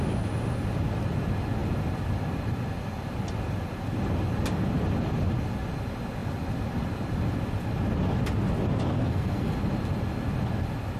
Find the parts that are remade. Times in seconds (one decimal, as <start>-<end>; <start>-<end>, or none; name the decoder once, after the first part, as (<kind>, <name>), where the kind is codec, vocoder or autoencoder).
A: 8.9-9.5 (codec, SNAC)